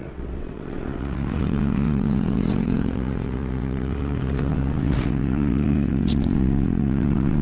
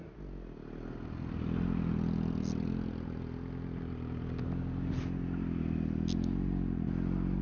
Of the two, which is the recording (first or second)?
second